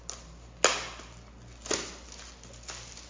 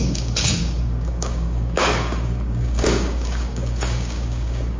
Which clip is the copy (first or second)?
second